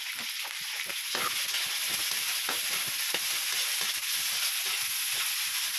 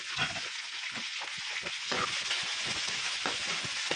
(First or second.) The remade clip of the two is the second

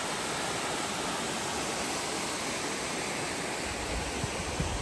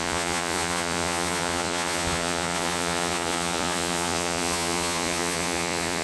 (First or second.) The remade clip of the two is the second